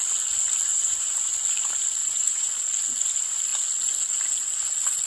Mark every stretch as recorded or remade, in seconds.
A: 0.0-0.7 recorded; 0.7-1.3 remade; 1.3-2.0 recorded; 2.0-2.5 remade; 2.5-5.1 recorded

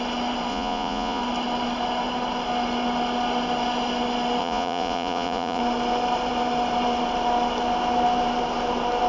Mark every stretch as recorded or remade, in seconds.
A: 0.0-0.5 recorded; 0.5-1.2 remade; 1.2-4.4 recorded; 4.4-5.6 remade; 5.6-9.1 recorded

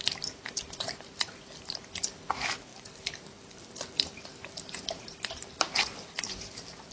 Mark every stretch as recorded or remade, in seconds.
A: 0.0-2.7 recorded; 2.7-6.9 remade